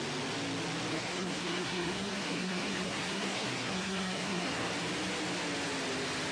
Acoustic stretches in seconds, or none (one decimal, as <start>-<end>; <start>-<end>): 0.0-0.9; 4.7-6.3